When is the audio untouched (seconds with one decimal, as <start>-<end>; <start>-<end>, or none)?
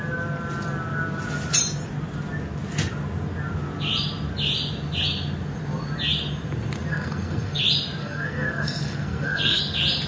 0.0-6.9; 7.6-8.0; 9.6-10.1